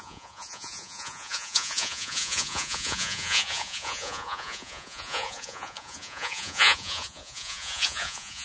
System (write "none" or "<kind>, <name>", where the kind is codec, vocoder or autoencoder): vocoder, Vocos